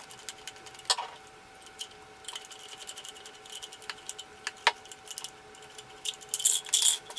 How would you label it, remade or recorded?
recorded